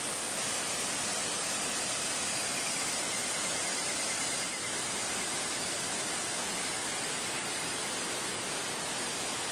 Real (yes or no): yes